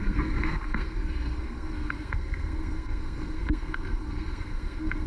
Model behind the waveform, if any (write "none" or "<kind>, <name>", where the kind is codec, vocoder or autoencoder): codec, SNAC